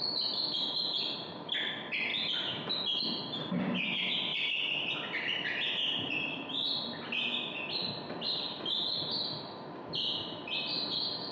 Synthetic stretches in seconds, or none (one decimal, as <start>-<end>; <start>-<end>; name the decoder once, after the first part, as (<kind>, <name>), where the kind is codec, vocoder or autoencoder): 2.1-2.7 (vocoder, BigVGAN v2); 4.3-8.6